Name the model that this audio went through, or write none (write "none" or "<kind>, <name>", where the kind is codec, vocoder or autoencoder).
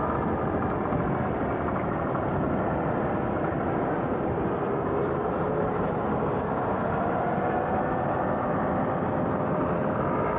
none